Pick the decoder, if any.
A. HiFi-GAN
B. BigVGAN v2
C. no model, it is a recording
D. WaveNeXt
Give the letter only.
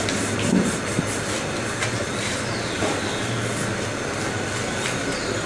B